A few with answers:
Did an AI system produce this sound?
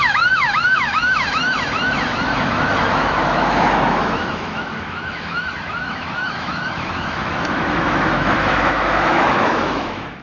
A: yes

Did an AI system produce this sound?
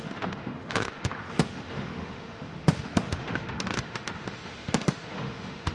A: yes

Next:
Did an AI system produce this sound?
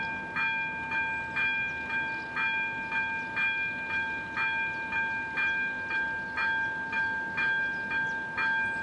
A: no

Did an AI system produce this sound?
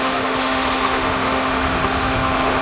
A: yes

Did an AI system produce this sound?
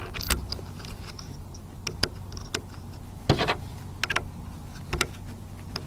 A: no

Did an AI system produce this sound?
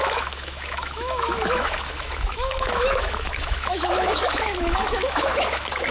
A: yes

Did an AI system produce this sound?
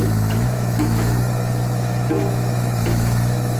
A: yes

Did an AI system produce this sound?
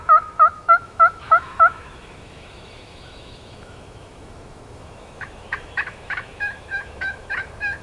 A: yes